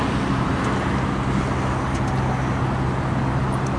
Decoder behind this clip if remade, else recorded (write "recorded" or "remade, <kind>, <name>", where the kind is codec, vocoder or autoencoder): recorded